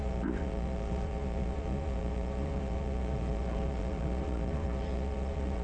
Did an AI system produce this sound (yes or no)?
yes